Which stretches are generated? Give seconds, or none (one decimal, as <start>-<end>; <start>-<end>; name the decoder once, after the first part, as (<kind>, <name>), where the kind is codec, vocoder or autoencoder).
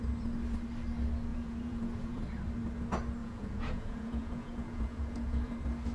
1.3-2.2 (vocoder, Vocos); 3.2-5.5